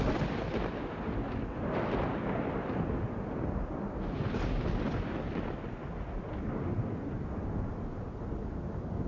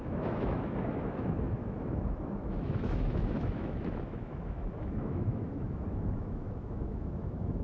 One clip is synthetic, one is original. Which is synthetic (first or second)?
second